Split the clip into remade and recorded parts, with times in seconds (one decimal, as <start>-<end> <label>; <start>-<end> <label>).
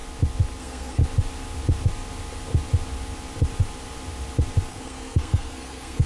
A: 0.0-0.6 recorded; 0.6-1.0 remade; 1.0-4.7 recorded; 4.7-6.1 remade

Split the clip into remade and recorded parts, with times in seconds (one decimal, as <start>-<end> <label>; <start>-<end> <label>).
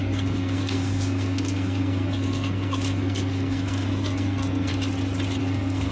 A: 0.0-4.7 remade; 4.7-5.4 recorded; 5.4-5.9 remade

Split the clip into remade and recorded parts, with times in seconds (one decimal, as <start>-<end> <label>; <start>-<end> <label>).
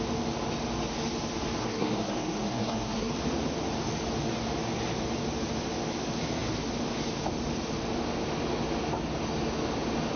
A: 0.0-1.6 recorded; 1.6-3.1 remade; 3.1-10.2 recorded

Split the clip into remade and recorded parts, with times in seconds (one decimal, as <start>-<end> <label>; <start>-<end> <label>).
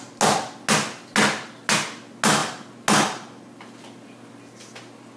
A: 0.0-5.2 recorded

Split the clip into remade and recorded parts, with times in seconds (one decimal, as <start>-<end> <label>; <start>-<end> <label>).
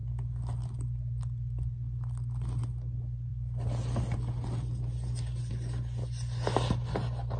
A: 0.0-7.4 recorded